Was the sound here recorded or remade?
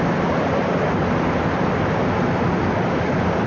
recorded